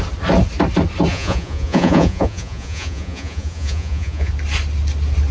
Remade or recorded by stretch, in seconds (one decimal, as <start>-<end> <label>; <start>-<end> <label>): 0.0-1.1 recorded; 1.1-4.3 remade; 4.3-5.3 recorded